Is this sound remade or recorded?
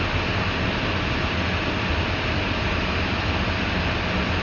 recorded